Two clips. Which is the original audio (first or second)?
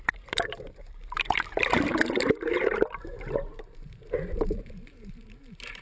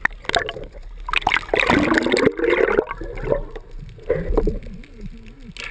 second